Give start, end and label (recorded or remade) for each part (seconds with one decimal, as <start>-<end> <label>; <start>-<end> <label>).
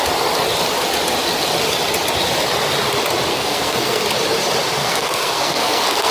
0.0-3.3 recorded; 3.3-4.0 remade; 4.0-4.8 recorded; 4.8-6.1 remade